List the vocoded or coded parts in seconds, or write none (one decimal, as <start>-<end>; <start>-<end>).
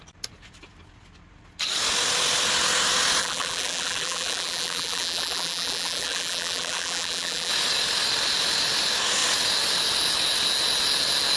3.2-7.5